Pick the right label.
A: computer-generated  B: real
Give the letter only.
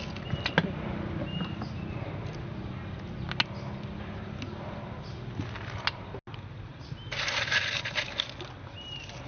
B